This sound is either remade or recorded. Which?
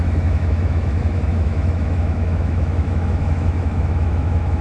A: remade